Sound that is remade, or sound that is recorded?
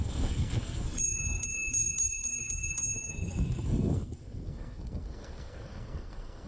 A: remade